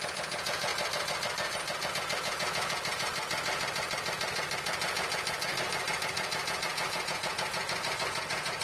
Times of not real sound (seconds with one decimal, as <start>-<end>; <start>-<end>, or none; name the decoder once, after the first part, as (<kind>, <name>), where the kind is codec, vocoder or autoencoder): 0.0-0.7 (vocoder, Vocos); 1.9-3.1; 5.9-8.6